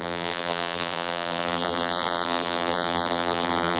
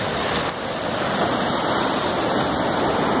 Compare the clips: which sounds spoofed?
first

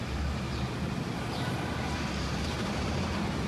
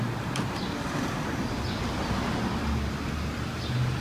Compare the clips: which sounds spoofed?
first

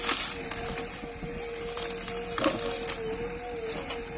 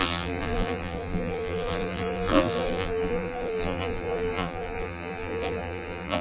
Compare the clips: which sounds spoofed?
second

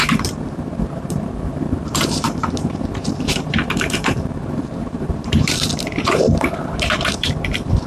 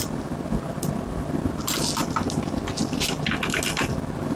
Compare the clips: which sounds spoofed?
first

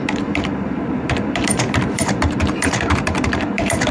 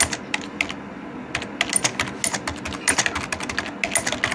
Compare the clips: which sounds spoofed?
first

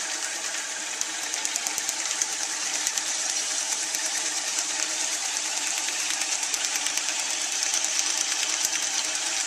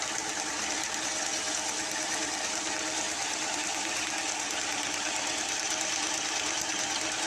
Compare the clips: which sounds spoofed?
first